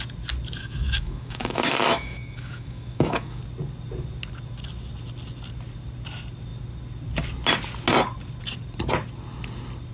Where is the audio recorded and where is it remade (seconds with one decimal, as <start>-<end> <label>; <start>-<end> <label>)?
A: 0.0-0.6 recorded; 0.6-3.4 remade; 3.4-9.9 recorded